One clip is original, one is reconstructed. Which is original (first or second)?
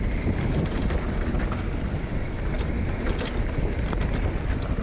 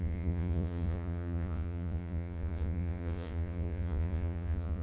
first